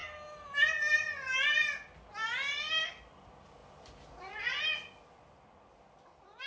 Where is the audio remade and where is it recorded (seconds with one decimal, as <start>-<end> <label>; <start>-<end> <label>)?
0.0-6.5 recorded